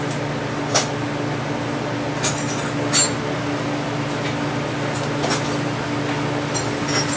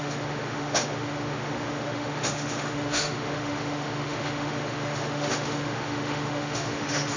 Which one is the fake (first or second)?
second